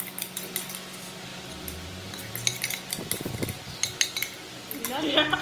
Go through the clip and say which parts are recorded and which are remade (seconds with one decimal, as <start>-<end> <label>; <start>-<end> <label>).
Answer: 0.0-5.4 recorded